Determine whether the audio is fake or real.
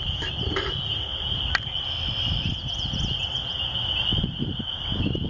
real